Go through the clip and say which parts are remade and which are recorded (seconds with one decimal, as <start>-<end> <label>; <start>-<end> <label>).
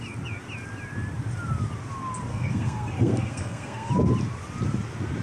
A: 0.0-2.3 recorded; 2.3-3.9 remade; 3.9-5.2 recorded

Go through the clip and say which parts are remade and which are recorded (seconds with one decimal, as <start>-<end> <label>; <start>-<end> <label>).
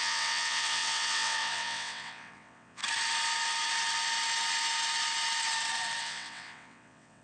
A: 0.0-2.8 remade; 2.8-6.0 recorded; 6.0-7.2 remade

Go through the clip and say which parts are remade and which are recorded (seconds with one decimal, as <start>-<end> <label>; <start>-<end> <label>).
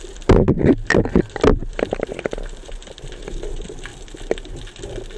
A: 0.0-3.9 remade; 3.9-4.5 recorded; 4.5-5.2 remade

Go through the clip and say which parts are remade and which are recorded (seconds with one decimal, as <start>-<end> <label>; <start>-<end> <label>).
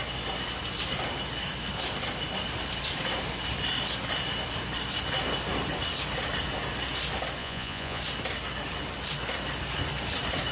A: 0.0-7.4 recorded; 7.4-8.0 remade; 8.0-10.5 recorded